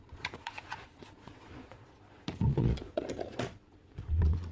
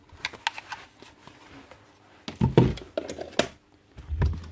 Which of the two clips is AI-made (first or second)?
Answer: first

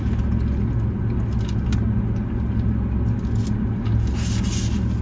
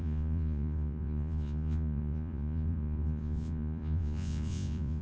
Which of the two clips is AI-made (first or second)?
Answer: second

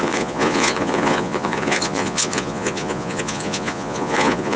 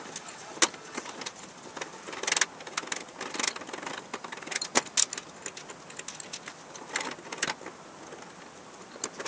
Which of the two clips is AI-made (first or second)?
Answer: first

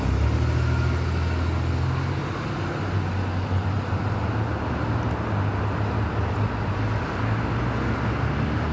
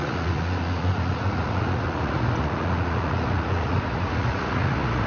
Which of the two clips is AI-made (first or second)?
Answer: second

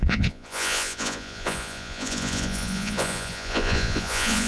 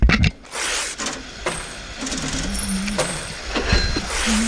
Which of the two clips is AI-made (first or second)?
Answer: first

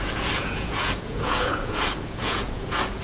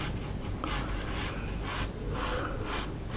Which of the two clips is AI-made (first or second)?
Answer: first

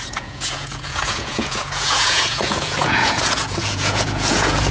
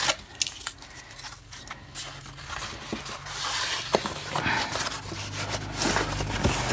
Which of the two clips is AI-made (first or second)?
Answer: first